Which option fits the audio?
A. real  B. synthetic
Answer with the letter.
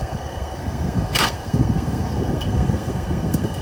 B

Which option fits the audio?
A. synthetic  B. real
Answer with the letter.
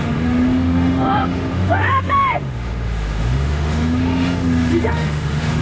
A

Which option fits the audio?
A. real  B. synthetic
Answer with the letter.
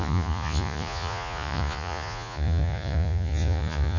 B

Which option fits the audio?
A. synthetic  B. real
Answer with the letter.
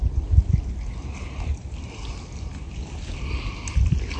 B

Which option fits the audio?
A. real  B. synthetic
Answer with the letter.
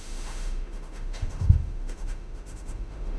B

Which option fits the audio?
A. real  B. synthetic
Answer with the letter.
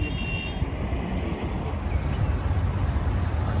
A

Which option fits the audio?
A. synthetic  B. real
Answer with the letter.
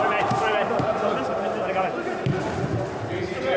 B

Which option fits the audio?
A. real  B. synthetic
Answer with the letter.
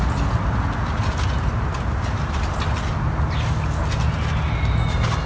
A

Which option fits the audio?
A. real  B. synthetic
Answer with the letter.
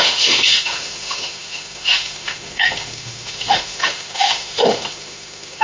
B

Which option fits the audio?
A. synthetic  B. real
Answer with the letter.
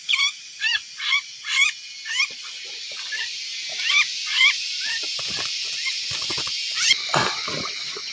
A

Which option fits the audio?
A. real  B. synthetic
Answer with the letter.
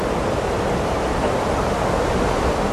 A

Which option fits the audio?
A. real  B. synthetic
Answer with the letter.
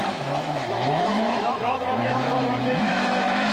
B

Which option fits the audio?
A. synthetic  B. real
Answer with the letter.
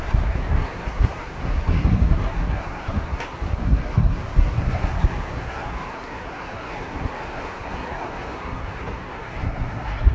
A